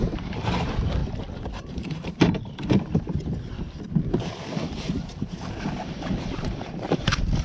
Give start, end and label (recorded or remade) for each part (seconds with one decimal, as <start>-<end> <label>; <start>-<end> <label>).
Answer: 0.0-1.0 remade; 1.0-1.5 recorded; 1.5-3.2 remade; 3.2-4.9 recorded; 4.9-7.4 remade